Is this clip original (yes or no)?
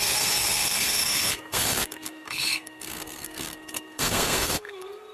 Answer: no